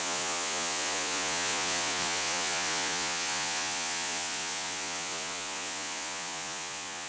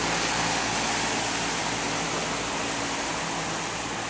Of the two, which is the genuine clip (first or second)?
second